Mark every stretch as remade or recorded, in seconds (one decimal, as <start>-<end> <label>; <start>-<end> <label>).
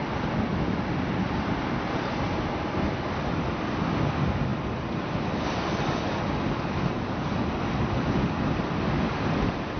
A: 0.0-9.8 recorded